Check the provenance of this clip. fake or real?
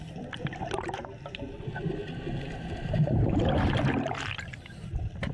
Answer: fake